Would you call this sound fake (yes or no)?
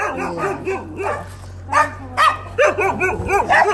no